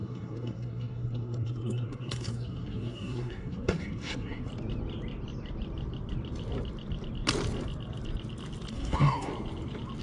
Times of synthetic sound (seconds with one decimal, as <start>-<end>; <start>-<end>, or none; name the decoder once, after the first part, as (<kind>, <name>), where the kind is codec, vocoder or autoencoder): 0.0-4.5 (codec, SNAC); 8.7-9.3